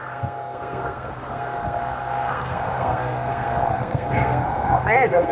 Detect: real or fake fake